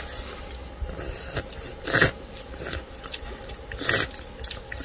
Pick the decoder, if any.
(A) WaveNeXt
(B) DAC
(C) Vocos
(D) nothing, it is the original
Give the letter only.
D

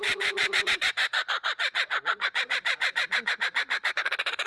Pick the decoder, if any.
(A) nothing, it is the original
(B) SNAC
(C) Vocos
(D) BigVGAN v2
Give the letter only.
C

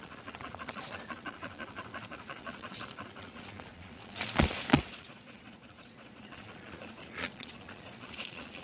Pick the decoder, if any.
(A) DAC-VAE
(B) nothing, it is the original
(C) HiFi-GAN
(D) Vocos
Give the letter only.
D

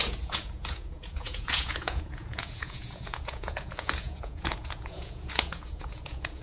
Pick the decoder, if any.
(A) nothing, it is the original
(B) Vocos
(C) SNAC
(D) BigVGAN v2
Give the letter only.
B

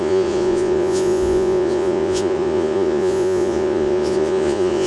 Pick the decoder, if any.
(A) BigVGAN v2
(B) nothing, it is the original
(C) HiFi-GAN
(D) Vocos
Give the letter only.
D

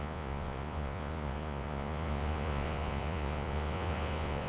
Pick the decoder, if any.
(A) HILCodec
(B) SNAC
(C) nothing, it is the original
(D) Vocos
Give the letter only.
D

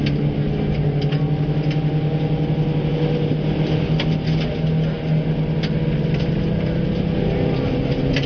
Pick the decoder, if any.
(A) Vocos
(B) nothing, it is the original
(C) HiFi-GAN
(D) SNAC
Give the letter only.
B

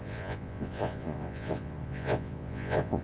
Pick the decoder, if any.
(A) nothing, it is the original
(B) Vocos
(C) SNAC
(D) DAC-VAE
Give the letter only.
B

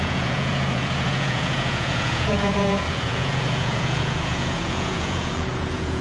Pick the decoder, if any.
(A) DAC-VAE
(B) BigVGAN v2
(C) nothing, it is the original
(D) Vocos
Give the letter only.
D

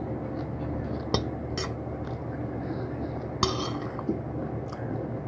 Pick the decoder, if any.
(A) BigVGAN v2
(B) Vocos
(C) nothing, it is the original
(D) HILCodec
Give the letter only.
C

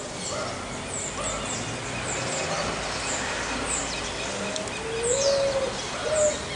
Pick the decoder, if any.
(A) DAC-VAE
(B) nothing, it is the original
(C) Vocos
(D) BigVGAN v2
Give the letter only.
B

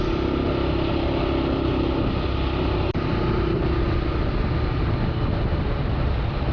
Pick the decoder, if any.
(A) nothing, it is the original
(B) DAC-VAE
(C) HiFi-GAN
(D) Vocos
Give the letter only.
A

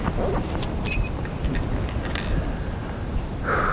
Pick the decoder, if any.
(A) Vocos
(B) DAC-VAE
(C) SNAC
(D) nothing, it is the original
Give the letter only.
D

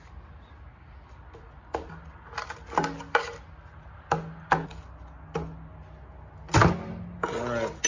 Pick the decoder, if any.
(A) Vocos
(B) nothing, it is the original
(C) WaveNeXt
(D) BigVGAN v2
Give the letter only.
B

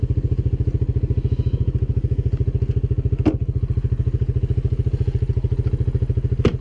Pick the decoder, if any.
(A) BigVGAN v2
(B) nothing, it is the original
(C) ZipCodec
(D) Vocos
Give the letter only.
B